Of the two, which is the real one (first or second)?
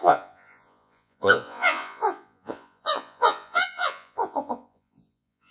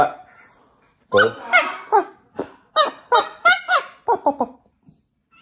second